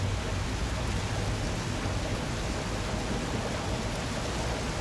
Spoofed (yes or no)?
no